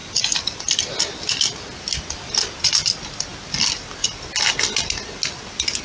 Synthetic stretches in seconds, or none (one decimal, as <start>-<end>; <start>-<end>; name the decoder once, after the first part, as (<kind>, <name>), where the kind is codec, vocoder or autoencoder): none